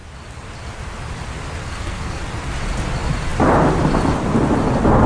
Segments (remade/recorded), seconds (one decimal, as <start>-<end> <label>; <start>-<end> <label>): 0.0-1.6 recorded; 1.6-2.2 remade; 2.2-5.1 recorded